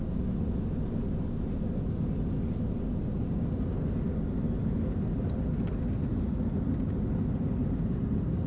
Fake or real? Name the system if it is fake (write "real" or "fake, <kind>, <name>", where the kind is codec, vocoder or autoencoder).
real